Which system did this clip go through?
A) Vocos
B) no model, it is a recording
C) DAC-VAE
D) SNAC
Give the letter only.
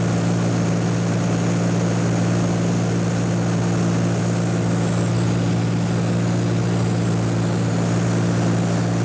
B